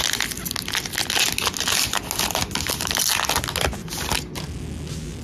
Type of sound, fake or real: real